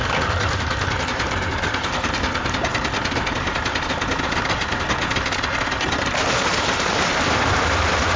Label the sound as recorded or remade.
recorded